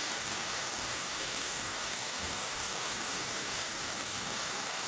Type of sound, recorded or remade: remade